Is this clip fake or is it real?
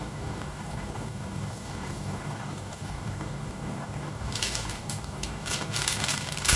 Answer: fake